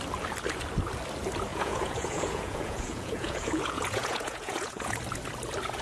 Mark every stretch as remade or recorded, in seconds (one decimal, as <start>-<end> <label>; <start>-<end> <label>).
0.0-1.5 recorded; 1.5-5.0 remade; 5.0-5.8 recorded